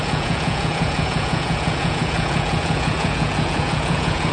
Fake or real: fake